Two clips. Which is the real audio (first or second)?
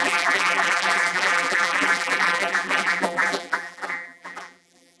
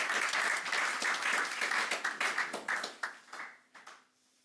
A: second